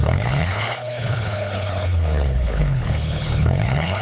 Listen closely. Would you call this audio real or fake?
fake